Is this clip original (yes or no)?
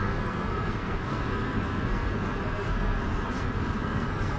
no